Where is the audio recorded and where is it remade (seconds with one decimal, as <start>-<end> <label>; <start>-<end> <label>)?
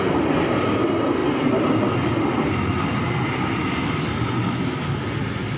0.0-5.6 recorded